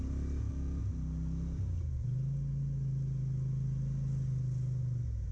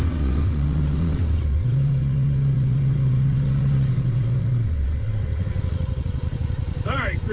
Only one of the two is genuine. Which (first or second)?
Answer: first